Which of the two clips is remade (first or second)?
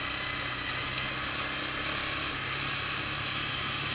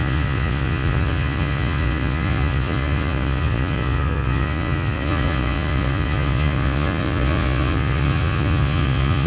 second